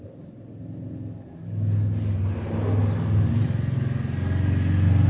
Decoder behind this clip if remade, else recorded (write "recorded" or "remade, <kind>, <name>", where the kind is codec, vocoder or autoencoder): recorded